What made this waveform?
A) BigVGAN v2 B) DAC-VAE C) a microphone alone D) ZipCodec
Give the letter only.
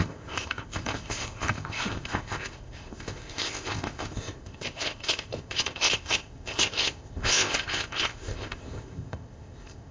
D